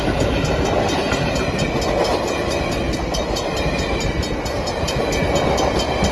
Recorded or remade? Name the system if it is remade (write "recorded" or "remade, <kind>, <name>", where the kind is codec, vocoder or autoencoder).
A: recorded